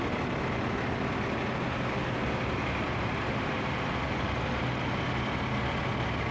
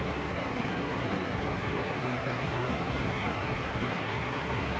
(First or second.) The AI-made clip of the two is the second